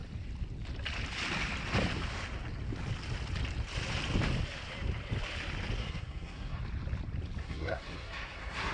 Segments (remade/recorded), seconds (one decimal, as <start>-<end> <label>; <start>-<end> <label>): 0.0-5.8 recorded; 5.8-6.6 remade; 6.6-7.4 recorded; 7.4-8.7 remade